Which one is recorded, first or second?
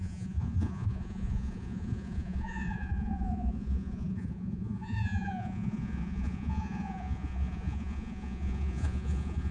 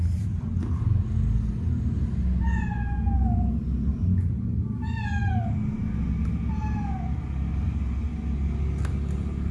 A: second